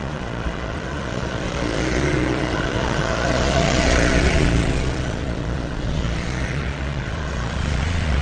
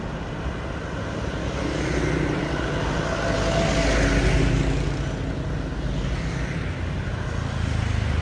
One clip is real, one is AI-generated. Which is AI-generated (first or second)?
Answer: first